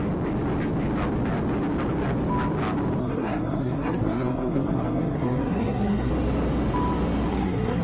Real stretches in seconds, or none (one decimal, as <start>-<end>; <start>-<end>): 0.0-3.0; 6.1-7.3